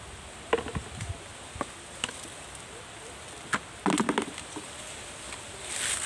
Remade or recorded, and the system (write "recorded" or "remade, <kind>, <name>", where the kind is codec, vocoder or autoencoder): recorded